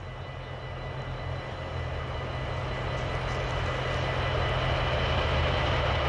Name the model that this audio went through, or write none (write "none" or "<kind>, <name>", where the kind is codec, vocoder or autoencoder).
none